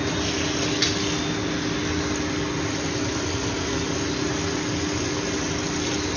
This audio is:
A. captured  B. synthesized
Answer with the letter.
A